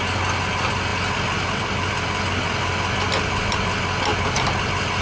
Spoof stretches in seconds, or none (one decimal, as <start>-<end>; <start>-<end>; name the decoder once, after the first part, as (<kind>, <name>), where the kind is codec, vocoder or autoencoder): none